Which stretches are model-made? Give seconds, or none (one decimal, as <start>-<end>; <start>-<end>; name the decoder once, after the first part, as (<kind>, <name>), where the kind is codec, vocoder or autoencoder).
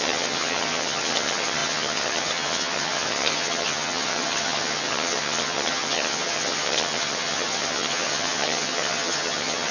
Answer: 0.0-9.7 (vocoder, HiFi-GAN)